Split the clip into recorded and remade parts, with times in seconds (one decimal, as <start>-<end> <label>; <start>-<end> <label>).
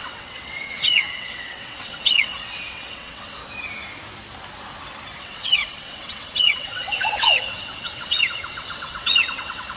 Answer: 0.0-3.4 remade; 3.4-5.2 recorded; 5.2-9.8 remade